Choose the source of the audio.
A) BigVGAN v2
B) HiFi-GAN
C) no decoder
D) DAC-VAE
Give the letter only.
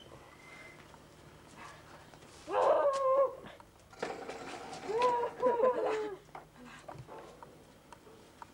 C